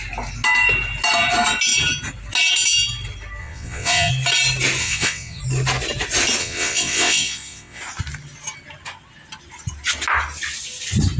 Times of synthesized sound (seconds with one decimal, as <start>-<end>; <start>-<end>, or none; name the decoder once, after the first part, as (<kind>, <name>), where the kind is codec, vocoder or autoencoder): 3.4-4.1 (vocoder, WaveNeXt); 4.8-5.4; 6.4-7.8